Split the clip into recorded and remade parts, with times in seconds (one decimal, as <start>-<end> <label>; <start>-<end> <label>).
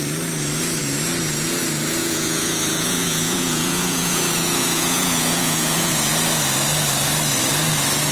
0.0-2.0 recorded; 2.0-6.1 remade; 6.1-8.1 recorded